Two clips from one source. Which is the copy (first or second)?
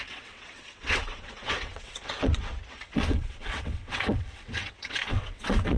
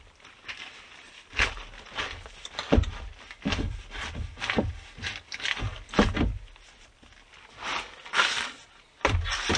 first